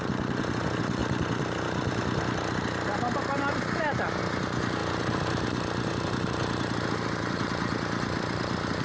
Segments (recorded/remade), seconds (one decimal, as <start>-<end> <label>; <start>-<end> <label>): 0.0-8.8 recorded